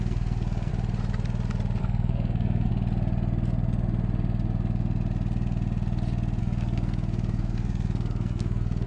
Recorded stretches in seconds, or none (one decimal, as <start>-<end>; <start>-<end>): 0.7-1.8; 2.7-6.4